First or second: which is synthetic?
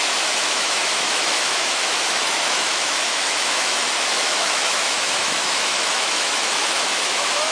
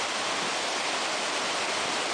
first